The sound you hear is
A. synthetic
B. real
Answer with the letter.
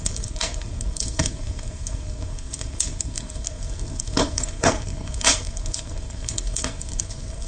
A